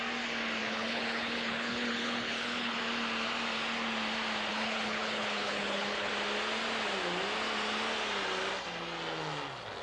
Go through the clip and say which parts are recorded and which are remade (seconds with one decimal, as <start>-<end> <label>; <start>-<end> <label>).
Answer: 0.0-0.6 recorded; 0.6-2.8 remade; 2.8-4.5 recorded; 4.5-6.1 remade; 6.1-9.8 recorded